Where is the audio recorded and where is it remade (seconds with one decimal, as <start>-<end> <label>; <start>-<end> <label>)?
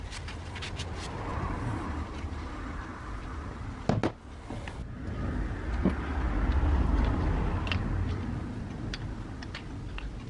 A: 0.0-1.3 recorded; 1.3-3.6 remade; 3.6-10.3 recorded